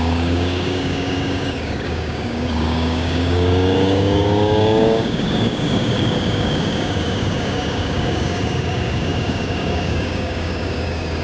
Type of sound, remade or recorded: remade